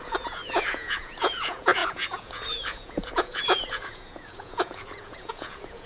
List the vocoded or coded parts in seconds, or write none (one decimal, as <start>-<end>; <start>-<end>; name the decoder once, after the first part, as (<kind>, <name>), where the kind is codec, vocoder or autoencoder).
0.0-5.9 (vocoder, Vocos)